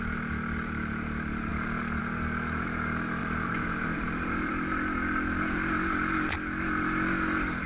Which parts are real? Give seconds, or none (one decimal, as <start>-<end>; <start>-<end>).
0.0-3.2; 4.5-7.7